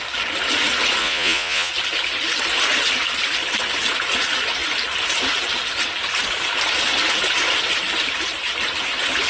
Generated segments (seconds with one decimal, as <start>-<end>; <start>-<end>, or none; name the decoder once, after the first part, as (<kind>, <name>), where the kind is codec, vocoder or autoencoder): 1.0-1.7 (vocoder, Vocos)